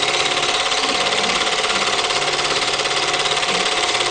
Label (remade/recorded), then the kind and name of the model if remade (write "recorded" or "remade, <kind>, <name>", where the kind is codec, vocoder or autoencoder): remade, vocoder, BigVGAN v2